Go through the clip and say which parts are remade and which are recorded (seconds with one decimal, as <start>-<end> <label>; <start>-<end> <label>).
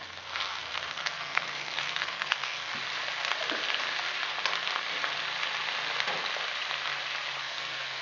0.0-2.7 remade; 2.7-7.4 recorded; 7.4-8.0 remade